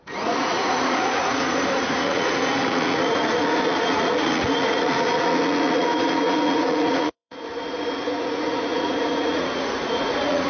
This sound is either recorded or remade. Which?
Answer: remade